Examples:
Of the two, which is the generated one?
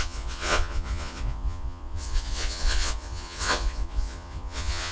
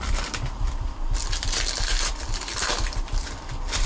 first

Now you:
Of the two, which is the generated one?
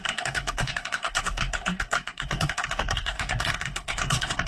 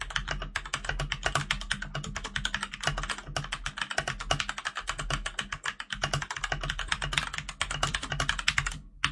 first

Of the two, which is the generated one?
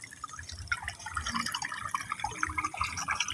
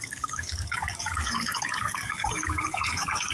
second